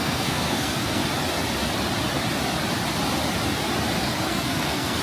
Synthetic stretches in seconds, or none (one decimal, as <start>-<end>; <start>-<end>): 0.0-1.0; 4.0-5.0